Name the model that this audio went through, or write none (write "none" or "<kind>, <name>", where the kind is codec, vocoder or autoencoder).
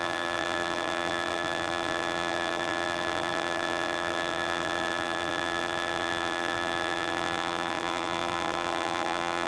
vocoder, BigVGAN v2